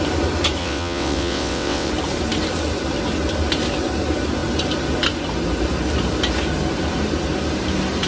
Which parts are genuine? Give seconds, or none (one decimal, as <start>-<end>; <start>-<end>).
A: 0.0-0.6; 1.9-8.1

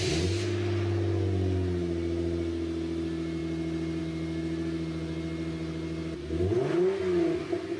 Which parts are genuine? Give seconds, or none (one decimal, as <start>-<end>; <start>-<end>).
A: 0.0-7.8

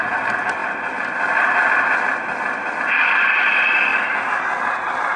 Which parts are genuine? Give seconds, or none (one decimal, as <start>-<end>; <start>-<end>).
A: 0.0-5.2

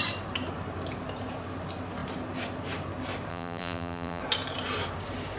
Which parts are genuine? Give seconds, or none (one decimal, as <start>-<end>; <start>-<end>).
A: 0.0-3.3; 4.2-5.4

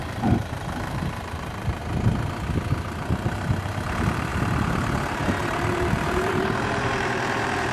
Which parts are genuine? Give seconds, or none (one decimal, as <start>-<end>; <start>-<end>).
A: 1.8-2.7

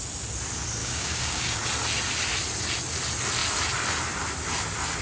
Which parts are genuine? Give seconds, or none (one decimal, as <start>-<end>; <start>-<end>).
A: 0.0-0.8; 1.6-5.0

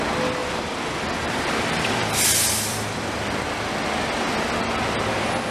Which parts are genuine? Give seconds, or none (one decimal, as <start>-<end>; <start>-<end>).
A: 0.0-0.4; 3.7-5.5